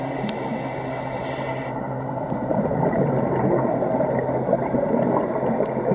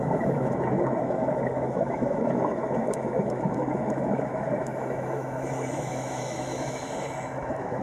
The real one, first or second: first